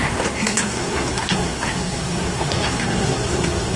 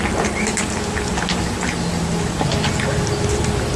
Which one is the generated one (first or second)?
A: first